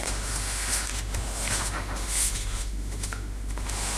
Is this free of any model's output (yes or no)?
no